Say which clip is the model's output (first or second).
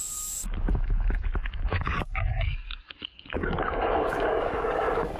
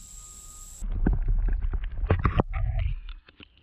first